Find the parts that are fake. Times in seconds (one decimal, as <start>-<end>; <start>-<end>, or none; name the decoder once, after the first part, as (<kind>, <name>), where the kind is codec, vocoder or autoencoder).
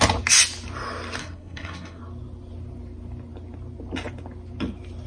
1.2-2.0 (codec, SNAC)